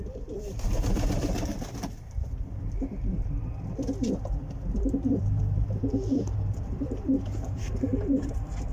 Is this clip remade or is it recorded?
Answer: remade